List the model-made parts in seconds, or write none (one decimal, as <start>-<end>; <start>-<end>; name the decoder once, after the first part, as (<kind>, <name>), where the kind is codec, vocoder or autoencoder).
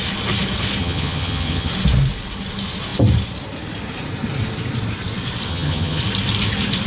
0.8-1.7 (vocoder, HiFi-GAN); 5.5-6.0